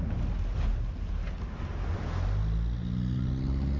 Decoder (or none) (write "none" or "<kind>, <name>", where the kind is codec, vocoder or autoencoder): none